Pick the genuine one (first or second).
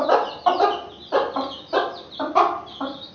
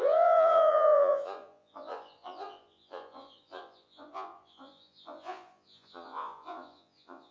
first